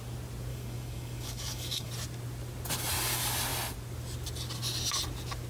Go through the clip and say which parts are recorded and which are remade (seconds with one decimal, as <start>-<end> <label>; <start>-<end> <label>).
0.0-0.5 recorded; 0.5-1.9 remade; 1.9-5.5 recorded